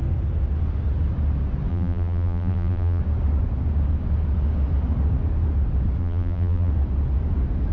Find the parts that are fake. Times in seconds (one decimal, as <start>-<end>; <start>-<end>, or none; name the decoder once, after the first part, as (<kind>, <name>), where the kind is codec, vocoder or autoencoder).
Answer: 1.7-3.0 (vocoder, BigVGAN v2); 6.0-6.7